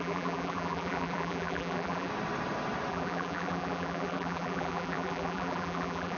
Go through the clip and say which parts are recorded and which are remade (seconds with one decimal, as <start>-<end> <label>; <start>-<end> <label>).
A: 0.0-2.1 remade; 2.1-2.9 recorded; 2.9-6.2 remade